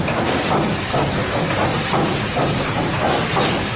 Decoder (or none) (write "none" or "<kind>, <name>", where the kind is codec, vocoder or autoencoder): vocoder, BigVGAN v2